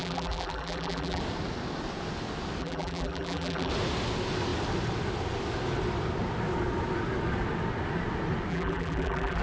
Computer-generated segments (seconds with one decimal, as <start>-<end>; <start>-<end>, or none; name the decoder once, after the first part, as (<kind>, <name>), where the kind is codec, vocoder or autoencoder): 0.0-1.2 (vocoder, BigVGAN v2); 2.6-3.7; 8.5-9.4